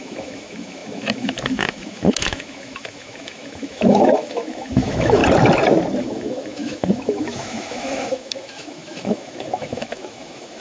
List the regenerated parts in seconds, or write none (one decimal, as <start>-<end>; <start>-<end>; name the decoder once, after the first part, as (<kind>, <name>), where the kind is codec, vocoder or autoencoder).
0.0-5.2 (autoencoder, DAC-VAE); 6.0-10.6